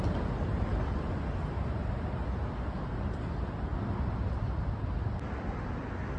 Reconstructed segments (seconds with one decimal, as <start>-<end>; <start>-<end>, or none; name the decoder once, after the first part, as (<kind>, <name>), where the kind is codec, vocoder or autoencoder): none